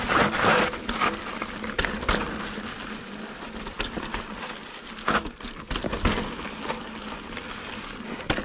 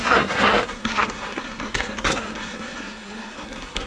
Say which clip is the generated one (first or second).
second